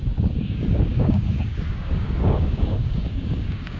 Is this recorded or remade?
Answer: remade